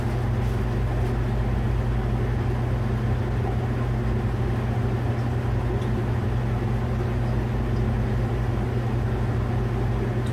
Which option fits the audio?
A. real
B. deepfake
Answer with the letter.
A